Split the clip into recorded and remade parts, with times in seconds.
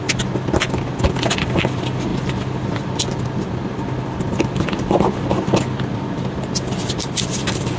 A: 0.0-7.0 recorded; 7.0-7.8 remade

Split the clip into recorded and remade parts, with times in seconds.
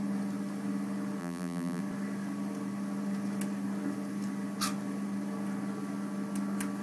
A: 0.0-1.2 recorded; 1.2-1.8 remade; 1.8-6.8 recorded